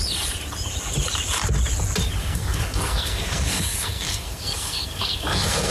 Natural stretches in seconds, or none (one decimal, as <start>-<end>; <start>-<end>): 0.0-2.2